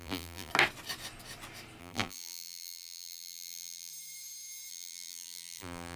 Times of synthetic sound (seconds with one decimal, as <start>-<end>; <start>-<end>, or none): 0.0-0.5; 1.8-3.9; 4.7-6.0